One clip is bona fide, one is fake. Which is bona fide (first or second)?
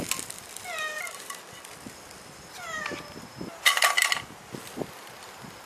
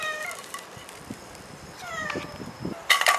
first